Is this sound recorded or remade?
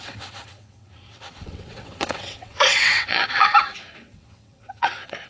remade